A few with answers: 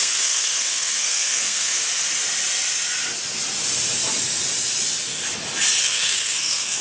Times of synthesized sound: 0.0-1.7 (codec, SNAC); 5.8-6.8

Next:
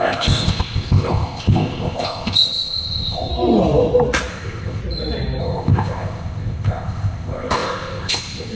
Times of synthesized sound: 0.0-3.3 (codec, ZipCodec); 4.3-4.8; 5.4-8.6

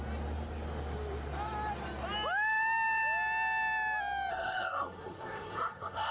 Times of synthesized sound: 4.3-6.1 (codec, SNAC)

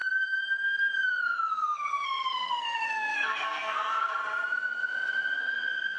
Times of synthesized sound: 0.0-4.2 (codec, SNAC); 5.4-6.0

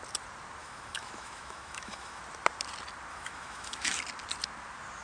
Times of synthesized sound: 0.6-2.2 (autoencoder, DAC-VAE); 3.1-4.0

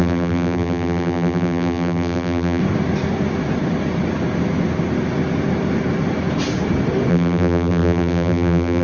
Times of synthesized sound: 0.0-2.6 (vocoder, BigVGAN v2); 7.1-8.8

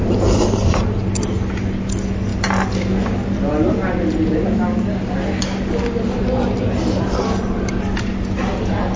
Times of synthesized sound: none